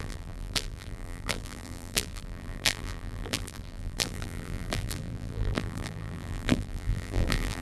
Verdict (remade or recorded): remade